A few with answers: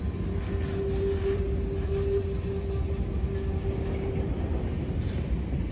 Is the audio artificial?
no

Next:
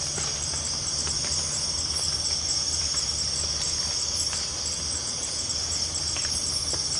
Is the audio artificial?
no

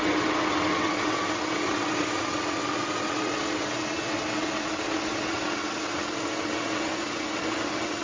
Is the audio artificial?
yes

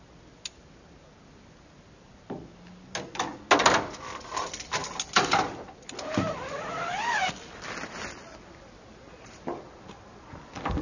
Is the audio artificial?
no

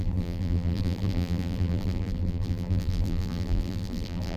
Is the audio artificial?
yes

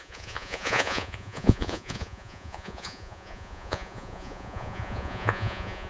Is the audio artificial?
yes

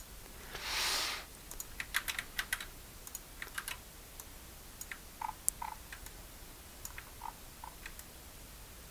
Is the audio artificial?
no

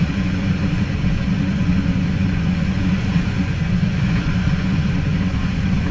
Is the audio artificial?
yes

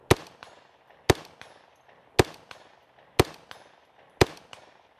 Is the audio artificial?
no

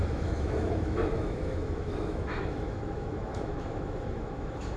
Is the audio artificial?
yes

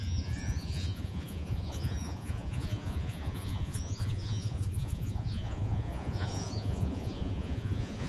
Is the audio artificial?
yes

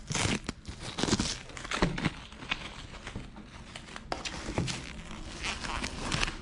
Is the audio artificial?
no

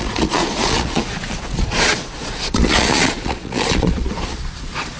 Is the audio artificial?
yes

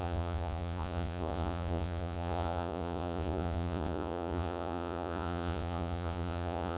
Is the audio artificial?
yes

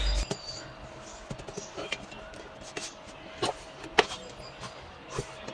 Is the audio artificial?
no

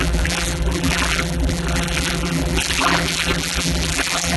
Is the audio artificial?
yes